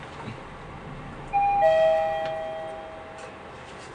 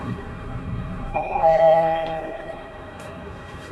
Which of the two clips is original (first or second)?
first